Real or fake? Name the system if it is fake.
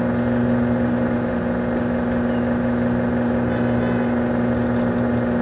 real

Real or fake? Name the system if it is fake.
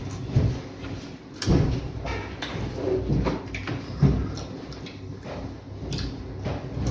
real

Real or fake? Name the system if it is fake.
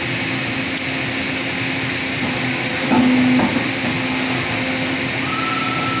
real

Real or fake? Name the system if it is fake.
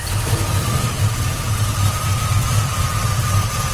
fake, vocoder, BigVGAN v2